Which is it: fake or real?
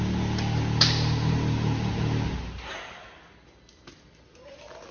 real